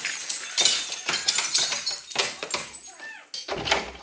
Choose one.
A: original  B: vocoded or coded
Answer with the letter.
A